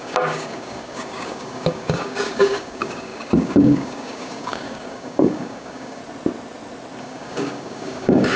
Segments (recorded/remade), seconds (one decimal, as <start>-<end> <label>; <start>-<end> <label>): 0.0-6.0 remade; 6.0-7.0 recorded; 7.0-8.4 remade

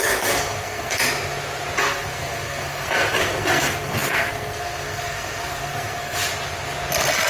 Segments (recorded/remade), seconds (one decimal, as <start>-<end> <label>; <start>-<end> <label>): 0.0-1.0 remade; 1.0-1.8 recorded; 1.8-6.2 remade; 6.2-7.3 recorded